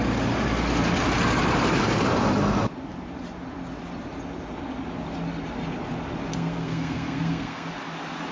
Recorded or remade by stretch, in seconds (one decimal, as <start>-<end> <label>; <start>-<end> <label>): 0.0-6.3 recorded; 6.3-7.7 remade; 7.7-8.3 recorded